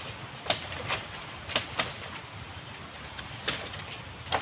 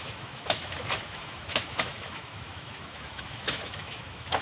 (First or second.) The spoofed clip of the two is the second